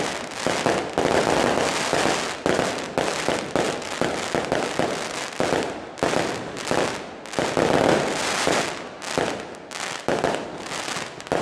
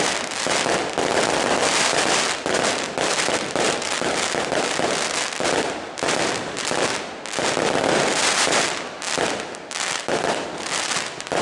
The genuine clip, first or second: first